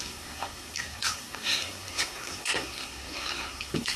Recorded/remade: remade